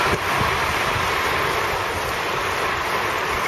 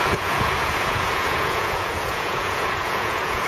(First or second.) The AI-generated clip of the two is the second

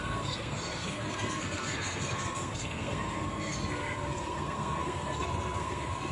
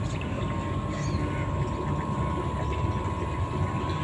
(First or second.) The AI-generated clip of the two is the first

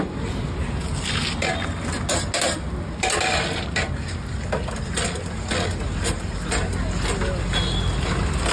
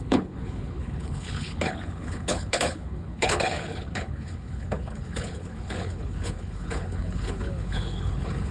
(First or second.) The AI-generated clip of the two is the second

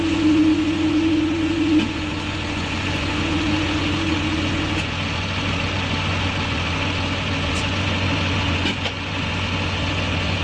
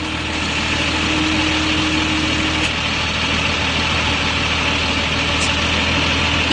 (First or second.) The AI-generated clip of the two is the first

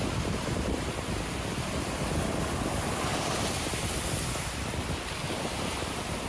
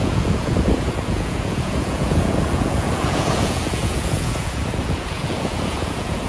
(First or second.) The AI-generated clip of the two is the second